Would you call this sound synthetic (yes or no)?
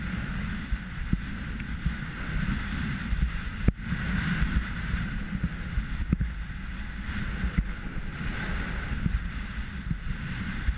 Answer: no